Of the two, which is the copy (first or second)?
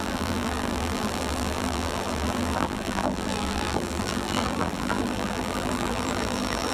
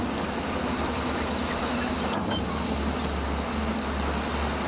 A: first